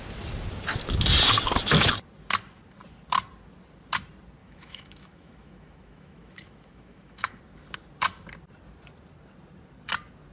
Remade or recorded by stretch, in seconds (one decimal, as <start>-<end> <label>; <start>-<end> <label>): 0.0-4.4 recorded; 4.4-7.4 remade; 7.4-10.3 recorded